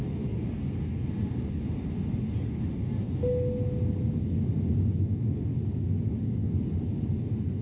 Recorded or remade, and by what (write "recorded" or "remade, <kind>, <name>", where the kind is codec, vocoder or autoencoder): recorded